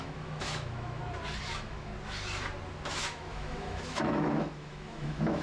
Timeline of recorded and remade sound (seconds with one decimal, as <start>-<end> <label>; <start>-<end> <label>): 0.0-1.0 remade; 1.0-1.5 recorded; 1.5-1.9 remade; 1.9-2.9 recorded; 2.9-5.4 remade